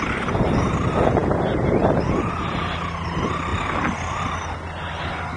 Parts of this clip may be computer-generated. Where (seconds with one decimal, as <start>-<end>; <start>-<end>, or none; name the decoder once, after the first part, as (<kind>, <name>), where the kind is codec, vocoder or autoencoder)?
none